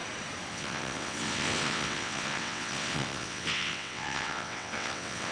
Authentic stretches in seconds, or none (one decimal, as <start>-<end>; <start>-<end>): 0.0-0.5